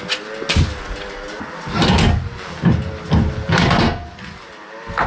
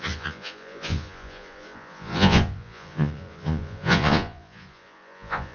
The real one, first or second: first